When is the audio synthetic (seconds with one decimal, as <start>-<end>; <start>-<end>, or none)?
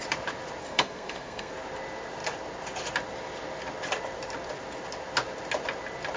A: 0.6-1.5